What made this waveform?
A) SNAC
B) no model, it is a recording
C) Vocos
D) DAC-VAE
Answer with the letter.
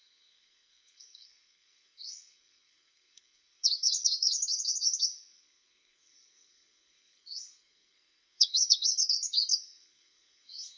A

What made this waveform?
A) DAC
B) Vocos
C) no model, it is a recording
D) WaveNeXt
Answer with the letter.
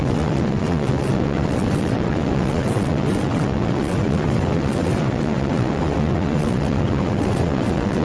D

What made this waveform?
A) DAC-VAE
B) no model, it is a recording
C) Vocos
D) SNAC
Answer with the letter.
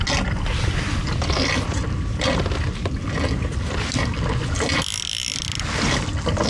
B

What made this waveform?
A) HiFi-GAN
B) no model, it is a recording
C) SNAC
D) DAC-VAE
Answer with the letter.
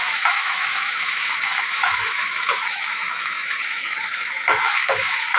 D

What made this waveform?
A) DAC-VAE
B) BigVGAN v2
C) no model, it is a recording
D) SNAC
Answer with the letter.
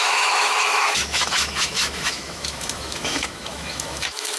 A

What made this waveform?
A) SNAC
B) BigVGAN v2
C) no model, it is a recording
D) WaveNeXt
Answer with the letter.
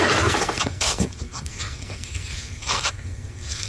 A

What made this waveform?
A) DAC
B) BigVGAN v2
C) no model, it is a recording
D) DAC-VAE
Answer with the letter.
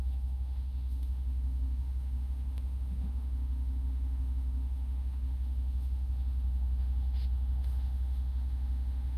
D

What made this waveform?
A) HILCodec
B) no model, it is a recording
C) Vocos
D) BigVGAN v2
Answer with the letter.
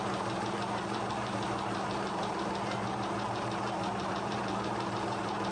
D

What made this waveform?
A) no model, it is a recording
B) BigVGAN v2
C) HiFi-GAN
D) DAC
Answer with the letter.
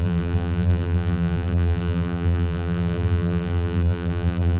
B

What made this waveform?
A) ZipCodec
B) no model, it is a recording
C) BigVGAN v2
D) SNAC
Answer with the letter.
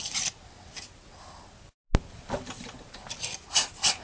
B